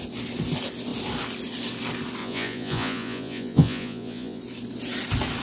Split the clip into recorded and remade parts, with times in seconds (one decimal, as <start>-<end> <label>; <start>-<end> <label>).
0.0-2.2 recorded; 2.2-4.4 remade; 4.4-5.4 recorded

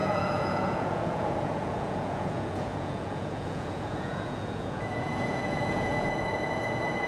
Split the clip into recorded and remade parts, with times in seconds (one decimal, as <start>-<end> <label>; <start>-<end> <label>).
0.0-7.1 remade

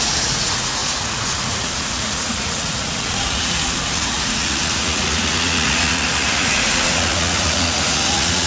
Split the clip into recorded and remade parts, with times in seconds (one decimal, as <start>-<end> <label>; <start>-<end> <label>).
0.0-8.5 remade